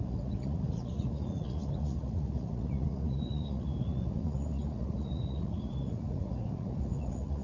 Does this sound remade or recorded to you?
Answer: remade